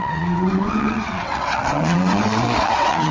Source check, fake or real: fake